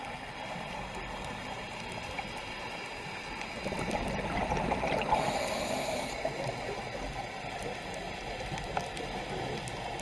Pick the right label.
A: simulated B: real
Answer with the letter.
B